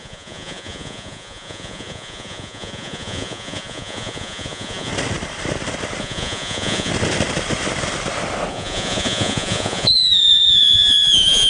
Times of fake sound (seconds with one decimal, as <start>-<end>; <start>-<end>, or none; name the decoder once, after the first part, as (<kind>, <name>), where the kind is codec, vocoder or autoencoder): 0.0-4.9 (vocoder, Vocos); 6.0-6.9; 8.5-11.5